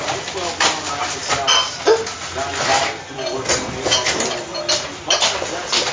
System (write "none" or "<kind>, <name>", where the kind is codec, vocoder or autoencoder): none